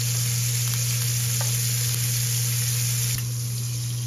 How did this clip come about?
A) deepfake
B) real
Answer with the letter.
B